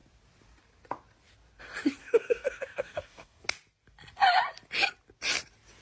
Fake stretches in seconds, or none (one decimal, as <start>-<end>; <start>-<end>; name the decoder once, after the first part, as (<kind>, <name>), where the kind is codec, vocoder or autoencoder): 2.0-3.4 (codec, DAC)